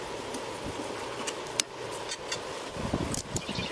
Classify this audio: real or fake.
real